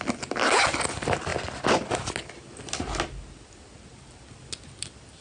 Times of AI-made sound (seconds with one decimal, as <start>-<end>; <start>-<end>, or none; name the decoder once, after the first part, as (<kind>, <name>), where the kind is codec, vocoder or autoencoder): none